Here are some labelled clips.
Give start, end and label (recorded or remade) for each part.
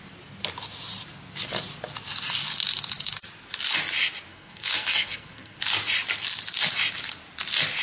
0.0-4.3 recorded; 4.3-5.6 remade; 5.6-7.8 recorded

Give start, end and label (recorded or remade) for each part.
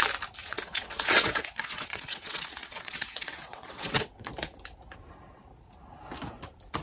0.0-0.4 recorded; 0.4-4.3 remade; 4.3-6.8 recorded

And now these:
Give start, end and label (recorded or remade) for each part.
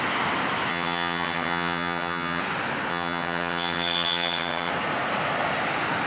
0.0-0.7 recorded; 0.7-2.4 remade; 2.4-2.9 recorded; 2.9-4.7 remade; 4.7-6.1 recorded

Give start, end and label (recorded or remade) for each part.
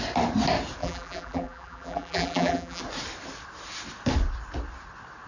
0.0-0.8 recorded; 0.8-2.8 remade; 2.8-5.3 recorded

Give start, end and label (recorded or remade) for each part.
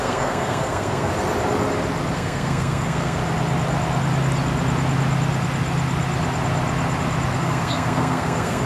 0.0-1.1 remade; 1.1-2.1 recorded; 2.1-3.2 remade; 3.2-7.4 recorded; 7.4-8.7 remade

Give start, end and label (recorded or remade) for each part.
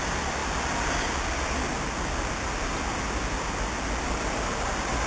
0.0-5.1 recorded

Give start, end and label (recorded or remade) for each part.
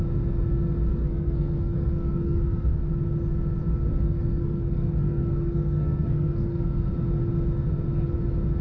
0.0-0.9 recorded; 0.9-2.9 remade; 2.9-3.9 recorded; 3.9-6.9 remade; 6.9-8.6 recorded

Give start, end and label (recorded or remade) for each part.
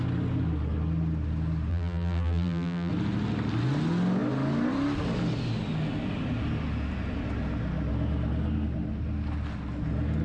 0.0-1.7 recorded; 1.7-2.9 remade; 2.9-10.2 recorded